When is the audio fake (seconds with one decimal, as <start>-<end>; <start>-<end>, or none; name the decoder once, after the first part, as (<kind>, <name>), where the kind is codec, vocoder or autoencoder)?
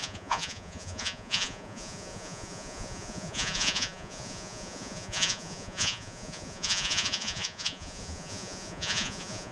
0.0-9.5 (vocoder, Vocos)